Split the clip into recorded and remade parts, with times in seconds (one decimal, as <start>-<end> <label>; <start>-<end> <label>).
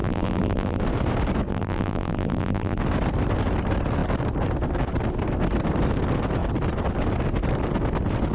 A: 0.0-0.8 remade; 0.8-1.5 recorded; 1.5-2.8 remade; 2.8-8.3 recorded